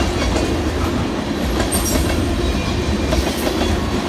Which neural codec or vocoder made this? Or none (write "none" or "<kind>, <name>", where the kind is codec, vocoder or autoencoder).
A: none